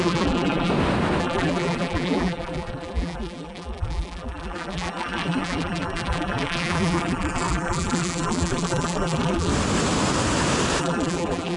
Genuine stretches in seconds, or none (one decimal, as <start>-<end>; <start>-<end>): 0.7-1.2; 9.5-10.8